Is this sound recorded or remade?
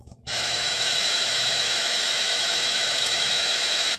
remade